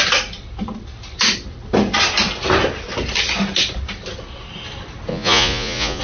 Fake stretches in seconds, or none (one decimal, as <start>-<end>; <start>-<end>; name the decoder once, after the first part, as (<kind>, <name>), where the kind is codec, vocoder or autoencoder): 5.1-6.0 (vocoder, Vocos)